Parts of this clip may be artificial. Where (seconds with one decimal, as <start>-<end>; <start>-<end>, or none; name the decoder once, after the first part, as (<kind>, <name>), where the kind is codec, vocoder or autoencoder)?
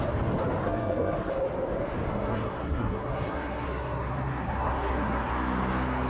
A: 0.6-1.3 (codec, SNAC); 2.1-5.3